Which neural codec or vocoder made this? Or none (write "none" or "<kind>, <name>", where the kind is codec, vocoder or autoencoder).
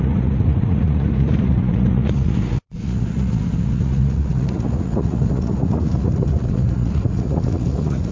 vocoder, Vocos